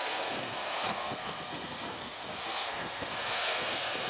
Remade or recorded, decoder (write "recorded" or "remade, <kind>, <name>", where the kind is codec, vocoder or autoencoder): remade, codec, SNAC